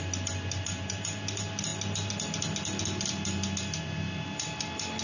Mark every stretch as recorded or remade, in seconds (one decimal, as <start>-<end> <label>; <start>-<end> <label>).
0.0-5.0 recorded